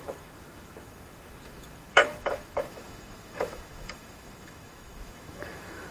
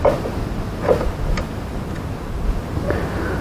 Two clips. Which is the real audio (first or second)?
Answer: second